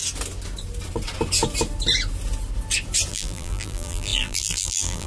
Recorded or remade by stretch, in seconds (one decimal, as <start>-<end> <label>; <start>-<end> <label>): 0.0-3.1 recorded; 3.1-5.1 remade